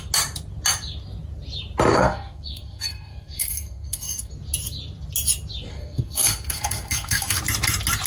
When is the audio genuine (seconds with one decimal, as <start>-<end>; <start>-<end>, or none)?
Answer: 0.0-1.9; 4.3-5.7; 7.4-8.1